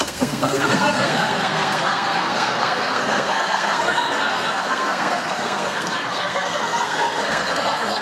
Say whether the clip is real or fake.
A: fake